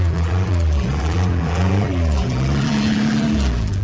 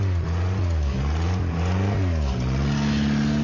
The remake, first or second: first